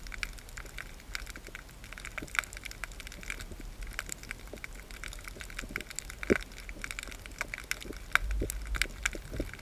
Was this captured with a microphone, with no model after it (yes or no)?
yes